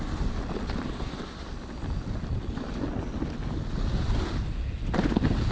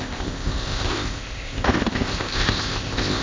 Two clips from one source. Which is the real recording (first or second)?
first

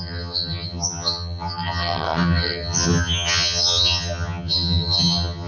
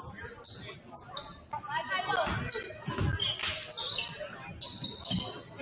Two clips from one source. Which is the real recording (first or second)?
second